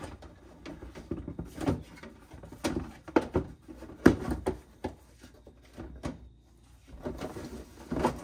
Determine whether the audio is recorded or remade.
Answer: recorded